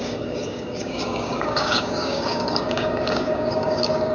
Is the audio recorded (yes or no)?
no